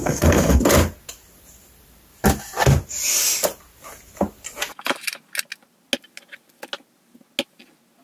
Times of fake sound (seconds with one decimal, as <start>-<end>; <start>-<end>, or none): 0.0-0.6